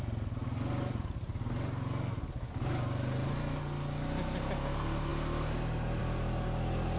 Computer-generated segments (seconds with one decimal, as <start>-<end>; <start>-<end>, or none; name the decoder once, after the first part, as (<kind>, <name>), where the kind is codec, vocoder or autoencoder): none